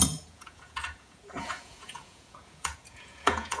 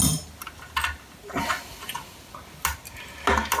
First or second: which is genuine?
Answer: second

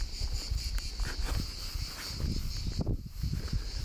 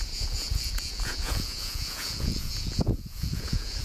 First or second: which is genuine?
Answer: first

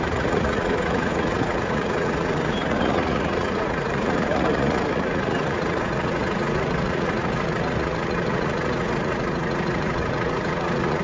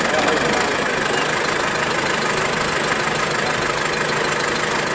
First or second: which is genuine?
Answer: second